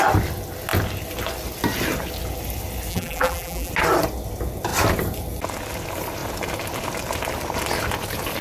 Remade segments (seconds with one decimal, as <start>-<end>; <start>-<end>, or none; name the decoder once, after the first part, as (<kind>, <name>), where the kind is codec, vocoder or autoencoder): 2.9-3.7 (vocoder, BigVGAN v2)